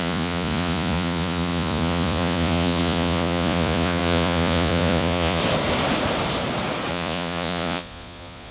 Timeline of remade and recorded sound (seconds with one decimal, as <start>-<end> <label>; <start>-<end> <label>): 0.0-5.4 remade; 5.4-6.9 recorded; 6.9-8.5 remade